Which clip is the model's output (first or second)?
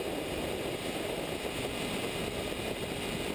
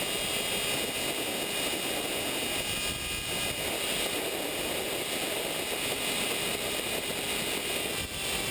first